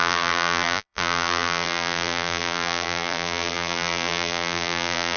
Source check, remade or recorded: remade